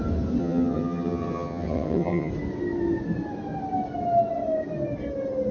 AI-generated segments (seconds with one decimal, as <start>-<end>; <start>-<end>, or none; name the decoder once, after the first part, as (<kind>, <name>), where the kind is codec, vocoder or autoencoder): 0.4-2.3 (vocoder, HiFi-GAN)